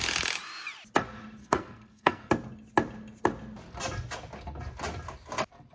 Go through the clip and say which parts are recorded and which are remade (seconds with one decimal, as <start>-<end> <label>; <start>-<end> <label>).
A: 0.0-1.4 recorded; 1.4-2.3 remade; 2.3-5.7 recorded